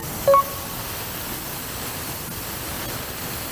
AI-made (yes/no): no